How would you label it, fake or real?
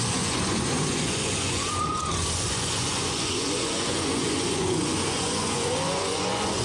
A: fake